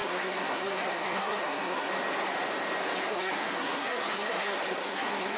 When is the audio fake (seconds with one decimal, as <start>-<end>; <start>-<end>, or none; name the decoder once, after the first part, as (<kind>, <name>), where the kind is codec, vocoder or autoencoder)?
0.0-1.9 (codec, SNAC); 3.1-5.4